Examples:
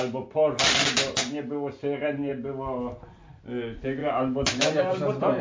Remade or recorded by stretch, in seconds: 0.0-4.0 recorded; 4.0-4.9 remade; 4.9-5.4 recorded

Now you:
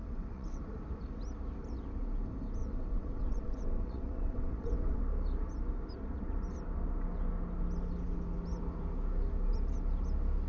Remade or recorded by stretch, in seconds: 0.0-0.6 remade; 0.6-2.6 recorded; 2.6-5.0 remade; 5.0-10.5 recorded